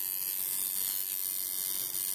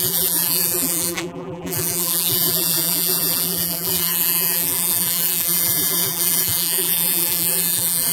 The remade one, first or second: second